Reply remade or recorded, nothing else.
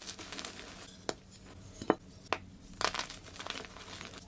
recorded